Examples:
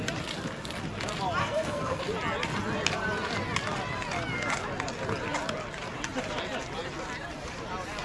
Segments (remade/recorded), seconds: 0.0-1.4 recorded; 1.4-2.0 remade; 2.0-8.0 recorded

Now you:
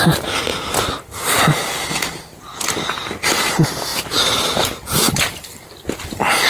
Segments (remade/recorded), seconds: 0.0-6.5 recorded